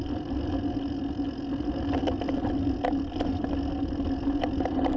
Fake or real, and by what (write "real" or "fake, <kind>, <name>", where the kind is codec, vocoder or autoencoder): real